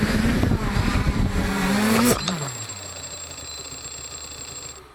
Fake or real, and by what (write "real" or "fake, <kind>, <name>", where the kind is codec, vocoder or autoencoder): fake, vocoder, BigVGAN v2